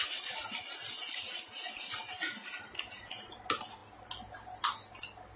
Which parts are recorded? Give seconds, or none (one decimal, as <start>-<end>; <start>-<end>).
0.0-5.4